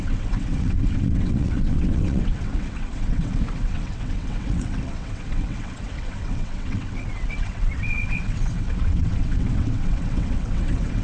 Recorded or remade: remade